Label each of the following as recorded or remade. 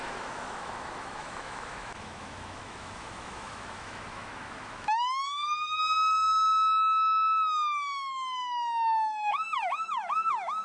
remade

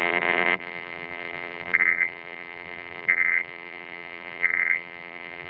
remade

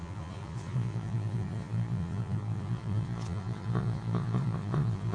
remade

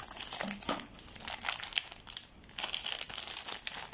recorded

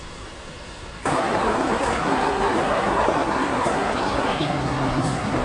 remade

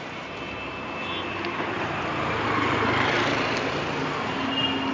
recorded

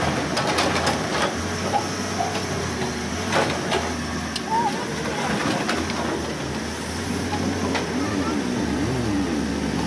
recorded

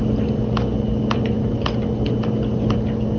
recorded